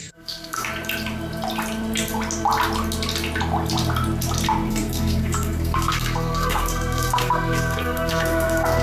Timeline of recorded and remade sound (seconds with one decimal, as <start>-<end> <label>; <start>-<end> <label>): 0.0-0.7 remade; 0.7-4.7 recorded; 4.7-8.8 remade